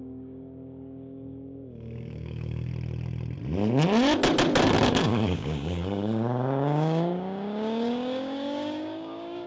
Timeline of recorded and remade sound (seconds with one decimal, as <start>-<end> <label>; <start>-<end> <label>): 0.0-2.7 remade; 2.7-5.0 recorded; 5.0-9.5 remade